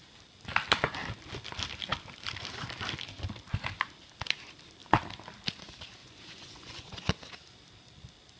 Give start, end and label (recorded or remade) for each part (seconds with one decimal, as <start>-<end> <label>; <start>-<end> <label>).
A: 0.0-6.0 recorded; 6.0-7.0 remade; 7.0-8.4 recorded